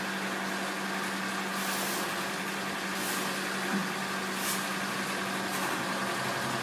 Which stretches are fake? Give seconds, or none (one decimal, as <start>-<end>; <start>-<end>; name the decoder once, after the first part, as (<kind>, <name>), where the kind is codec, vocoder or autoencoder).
1.5-2.9 (vocoder, BigVGAN v2)